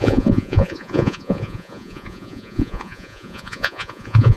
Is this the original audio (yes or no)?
no